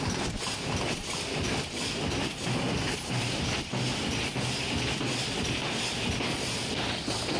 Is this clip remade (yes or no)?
no